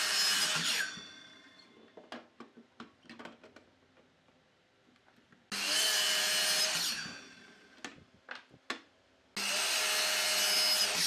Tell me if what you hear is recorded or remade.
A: recorded